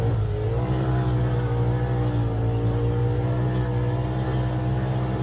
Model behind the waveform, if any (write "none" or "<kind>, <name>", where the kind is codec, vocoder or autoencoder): none